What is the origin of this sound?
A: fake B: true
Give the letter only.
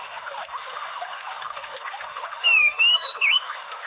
A